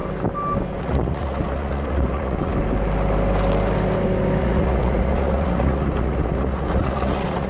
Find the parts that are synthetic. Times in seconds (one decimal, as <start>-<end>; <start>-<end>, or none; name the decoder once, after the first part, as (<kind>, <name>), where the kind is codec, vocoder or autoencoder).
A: 0.8-2.5 (vocoder, Vocos); 4.4-7.5

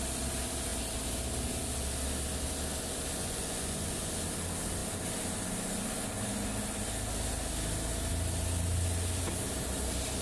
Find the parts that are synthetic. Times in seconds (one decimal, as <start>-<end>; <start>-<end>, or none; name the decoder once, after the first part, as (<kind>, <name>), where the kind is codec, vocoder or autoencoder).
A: 3.2-4.1 (vocoder, Vocos)